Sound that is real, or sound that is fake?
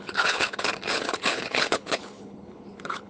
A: fake